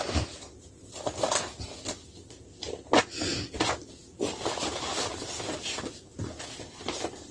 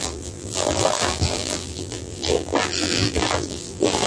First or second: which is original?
first